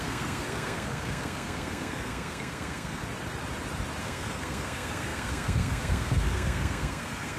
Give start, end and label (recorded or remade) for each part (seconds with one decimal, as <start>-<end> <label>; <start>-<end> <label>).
0.0-3.0 remade; 3.0-4.0 recorded; 4.0-7.4 remade